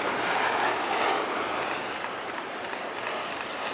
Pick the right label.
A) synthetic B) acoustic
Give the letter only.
B